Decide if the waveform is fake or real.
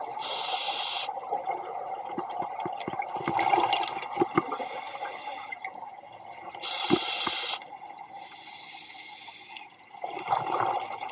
real